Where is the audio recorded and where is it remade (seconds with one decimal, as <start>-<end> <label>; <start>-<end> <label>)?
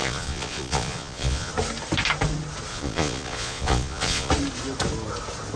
0.0-1.5 remade; 1.5-2.7 recorded; 2.7-4.3 remade; 4.3-5.6 recorded